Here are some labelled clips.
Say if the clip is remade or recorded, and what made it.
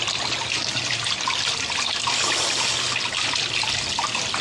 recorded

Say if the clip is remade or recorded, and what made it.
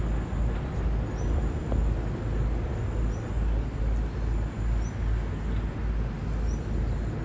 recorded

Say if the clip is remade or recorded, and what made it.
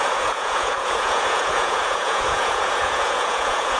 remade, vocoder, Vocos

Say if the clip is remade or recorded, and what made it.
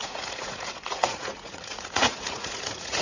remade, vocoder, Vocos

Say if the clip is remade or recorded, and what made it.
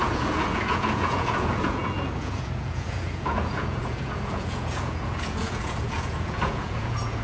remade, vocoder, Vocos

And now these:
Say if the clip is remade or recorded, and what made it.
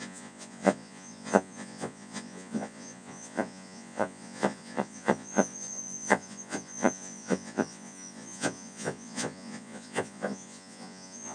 remade, vocoder, Vocos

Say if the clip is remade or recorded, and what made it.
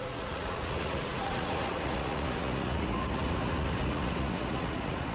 remade, vocoder, Vocos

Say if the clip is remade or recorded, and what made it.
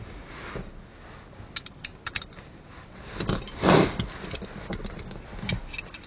recorded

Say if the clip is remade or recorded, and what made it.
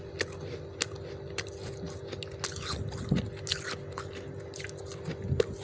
recorded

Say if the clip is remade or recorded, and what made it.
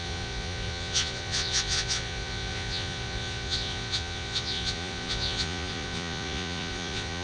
remade, vocoder, Vocos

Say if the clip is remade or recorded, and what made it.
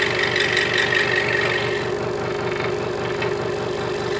recorded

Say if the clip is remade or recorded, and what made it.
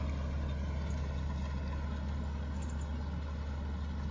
recorded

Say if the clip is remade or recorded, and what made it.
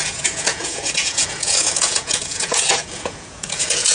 remade, vocoder, Vocos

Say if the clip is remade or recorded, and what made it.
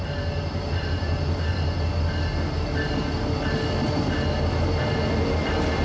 recorded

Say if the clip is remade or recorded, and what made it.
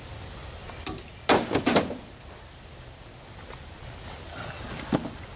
recorded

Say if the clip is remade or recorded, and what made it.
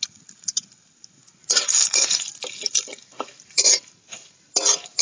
recorded